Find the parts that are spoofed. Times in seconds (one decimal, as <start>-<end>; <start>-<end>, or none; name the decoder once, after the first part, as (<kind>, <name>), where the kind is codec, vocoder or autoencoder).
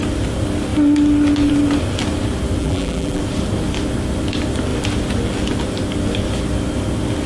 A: 2.6-3.2 (vocoder, BigVGAN v2)